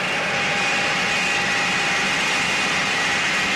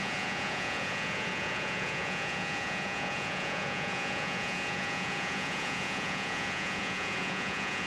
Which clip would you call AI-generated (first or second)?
second